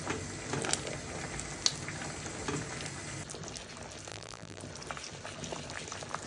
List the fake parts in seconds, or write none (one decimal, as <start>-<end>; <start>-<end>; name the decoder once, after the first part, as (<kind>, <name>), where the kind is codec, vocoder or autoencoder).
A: 4.1-4.6 (vocoder, BigVGAN v2)